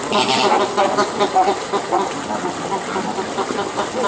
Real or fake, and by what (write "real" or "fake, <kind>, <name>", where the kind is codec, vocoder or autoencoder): real